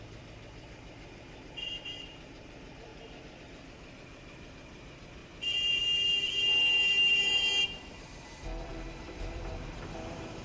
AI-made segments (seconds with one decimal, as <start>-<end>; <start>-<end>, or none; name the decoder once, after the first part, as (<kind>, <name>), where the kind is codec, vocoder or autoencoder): 0.0-2.9 (vocoder, BigVGAN v2); 3.4-5.2; 8.0-10.4